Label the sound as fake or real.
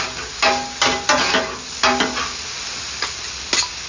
real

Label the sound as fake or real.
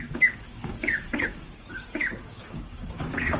fake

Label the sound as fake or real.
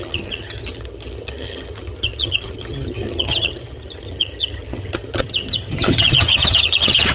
fake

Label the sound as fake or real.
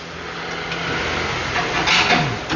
real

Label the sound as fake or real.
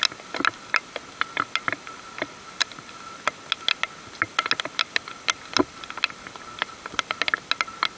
real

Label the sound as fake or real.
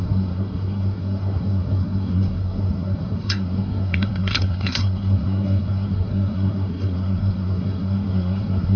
fake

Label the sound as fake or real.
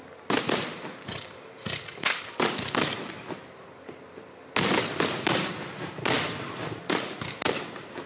real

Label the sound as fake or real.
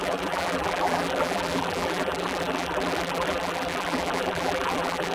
fake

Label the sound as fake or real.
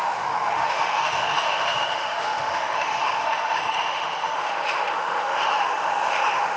fake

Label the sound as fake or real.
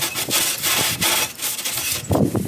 real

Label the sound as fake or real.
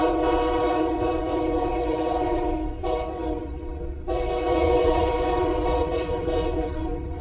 fake